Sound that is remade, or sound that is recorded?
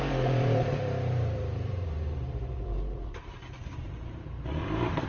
remade